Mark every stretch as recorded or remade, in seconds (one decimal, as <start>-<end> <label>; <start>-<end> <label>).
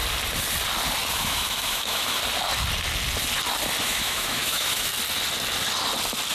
0.0-1.1 recorded; 1.1-2.2 remade; 2.2-3.8 recorded; 3.8-4.9 remade; 4.9-6.3 recorded